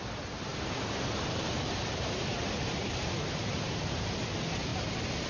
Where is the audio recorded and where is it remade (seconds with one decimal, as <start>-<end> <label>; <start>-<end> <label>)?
0.0-0.5 recorded; 0.5-3.7 remade; 3.7-5.3 recorded